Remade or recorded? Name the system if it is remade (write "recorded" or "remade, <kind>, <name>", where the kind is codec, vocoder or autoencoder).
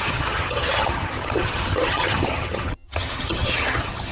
remade, vocoder, HiFi-GAN